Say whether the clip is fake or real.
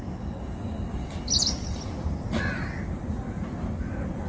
real